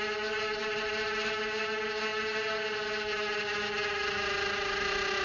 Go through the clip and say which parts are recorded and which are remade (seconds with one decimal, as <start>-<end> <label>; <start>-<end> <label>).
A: 0.0-5.2 recorded